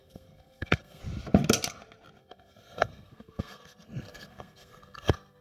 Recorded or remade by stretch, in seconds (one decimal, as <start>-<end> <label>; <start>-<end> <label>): 0.0-1.0 remade; 1.0-2.2 recorded; 2.2-5.4 remade